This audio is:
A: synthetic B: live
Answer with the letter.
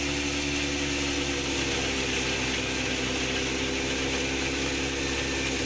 B